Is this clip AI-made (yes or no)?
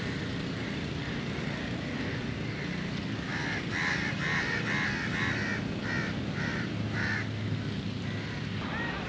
no